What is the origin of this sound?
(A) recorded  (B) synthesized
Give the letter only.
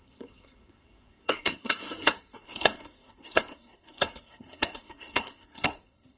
B